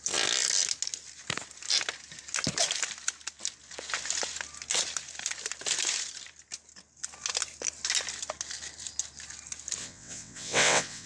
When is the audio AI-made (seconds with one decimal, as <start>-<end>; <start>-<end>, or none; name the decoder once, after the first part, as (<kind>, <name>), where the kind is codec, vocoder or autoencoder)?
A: 9.8-11.1 (vocoder, WaveNeXt)